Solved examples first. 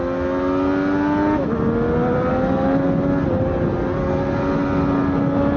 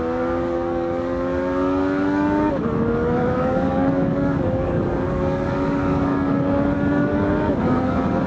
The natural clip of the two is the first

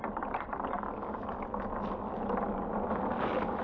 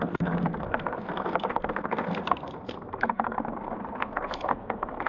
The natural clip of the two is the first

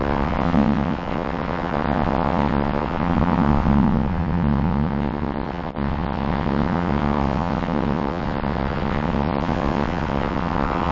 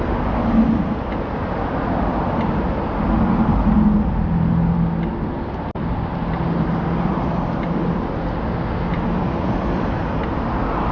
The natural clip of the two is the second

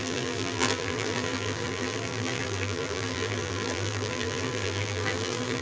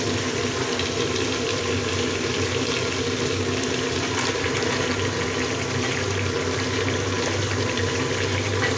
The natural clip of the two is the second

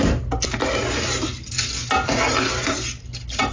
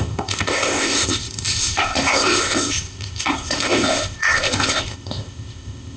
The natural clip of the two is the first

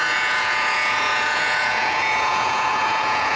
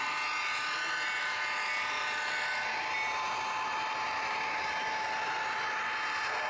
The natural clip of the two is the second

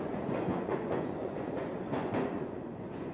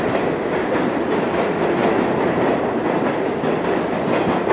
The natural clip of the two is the second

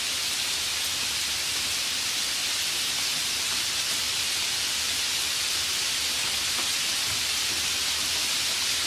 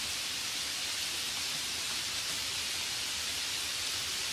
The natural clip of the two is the first